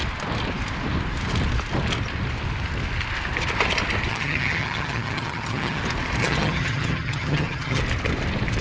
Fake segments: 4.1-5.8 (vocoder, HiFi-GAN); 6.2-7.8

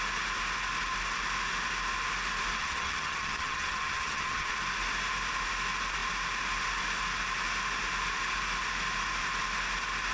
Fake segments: 2.6-4.5 (vocoder, HiFi-GAN)

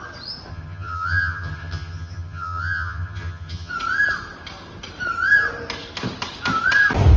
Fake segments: 0.5-3.7 (vocoder, HiFi-GAN)